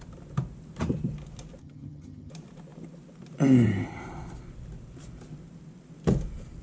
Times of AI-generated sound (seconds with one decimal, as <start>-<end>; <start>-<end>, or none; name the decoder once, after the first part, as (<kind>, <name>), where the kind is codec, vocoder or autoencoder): 1.6-2.3 (vocoder, HiFi-GAN)